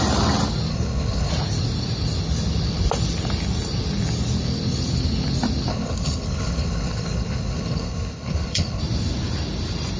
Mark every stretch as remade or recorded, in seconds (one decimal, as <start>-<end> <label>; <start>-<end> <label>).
0.0-0.7 recorded; 0.7-1.3 remade; 1.3-5.7 recorded; 5.7-8.8 remade; 8.8-10.0 recorded